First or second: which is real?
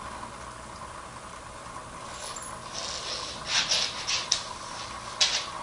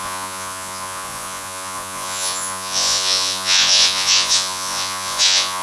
first